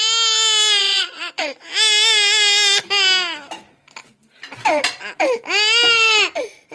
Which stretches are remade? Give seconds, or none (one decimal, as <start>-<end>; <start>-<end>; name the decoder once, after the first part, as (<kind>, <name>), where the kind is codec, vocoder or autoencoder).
0.8-1.6 (vocoder, WaveNeXt)